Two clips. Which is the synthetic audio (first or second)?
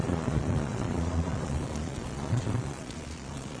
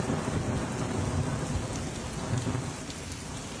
first